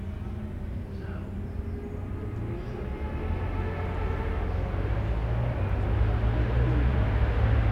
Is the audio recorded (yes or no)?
yes